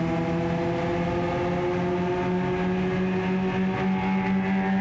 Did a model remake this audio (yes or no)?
no